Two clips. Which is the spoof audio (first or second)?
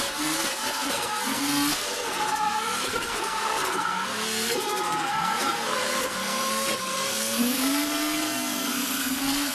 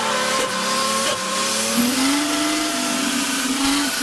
first